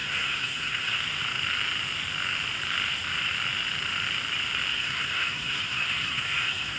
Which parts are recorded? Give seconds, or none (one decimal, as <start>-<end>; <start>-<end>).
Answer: 1.0-4.7